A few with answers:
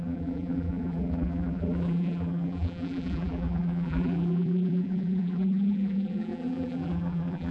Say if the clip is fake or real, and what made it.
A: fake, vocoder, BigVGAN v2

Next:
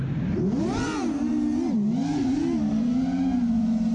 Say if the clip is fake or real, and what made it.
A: real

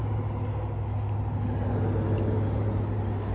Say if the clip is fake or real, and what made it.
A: real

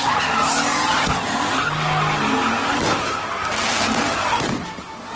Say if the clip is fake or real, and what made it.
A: real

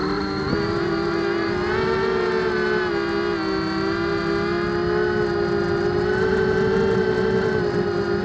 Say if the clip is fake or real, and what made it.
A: real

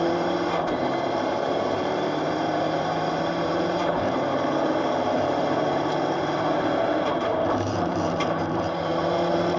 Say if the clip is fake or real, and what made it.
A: fake, vocoder, BigVGAN v2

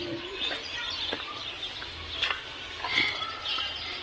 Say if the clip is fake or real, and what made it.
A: real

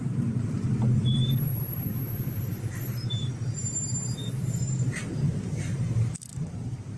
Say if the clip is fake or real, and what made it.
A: fake, vocoder, BigVGAN v2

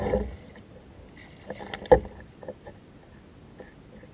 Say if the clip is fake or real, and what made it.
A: real